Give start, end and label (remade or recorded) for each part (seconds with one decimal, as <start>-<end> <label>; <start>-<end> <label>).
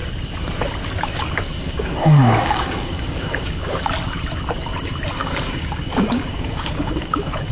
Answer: 0.0-1.6 recorded; 1.6-3.8 remade; 3.8-5.2 recorded; 5.2-7.5 remade